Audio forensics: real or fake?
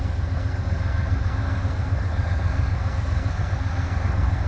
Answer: fake